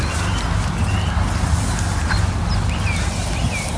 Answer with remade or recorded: recorded